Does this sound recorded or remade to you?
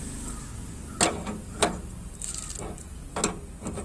recorded